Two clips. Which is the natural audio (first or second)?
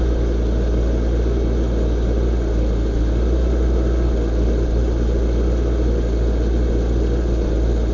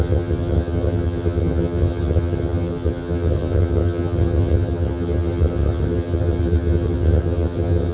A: first